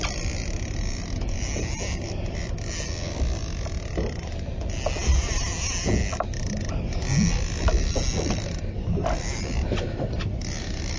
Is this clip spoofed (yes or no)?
no